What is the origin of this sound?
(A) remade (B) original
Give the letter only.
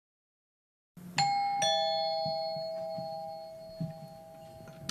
B